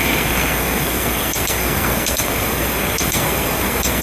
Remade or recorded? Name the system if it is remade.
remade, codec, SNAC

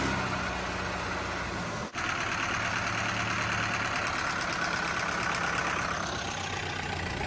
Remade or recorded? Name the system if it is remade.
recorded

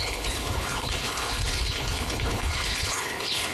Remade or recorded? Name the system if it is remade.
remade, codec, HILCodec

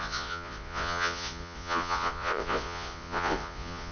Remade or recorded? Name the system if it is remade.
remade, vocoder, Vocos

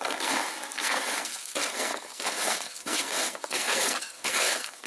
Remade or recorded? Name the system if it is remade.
remade, codec, SNAC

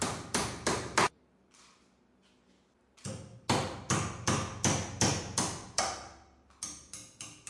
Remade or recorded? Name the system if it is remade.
recorded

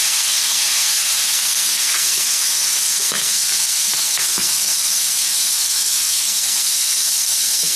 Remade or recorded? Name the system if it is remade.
remade, codec, SNAC